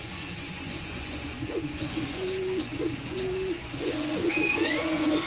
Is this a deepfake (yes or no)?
yes